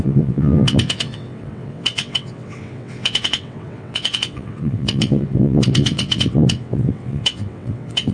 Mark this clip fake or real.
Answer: fake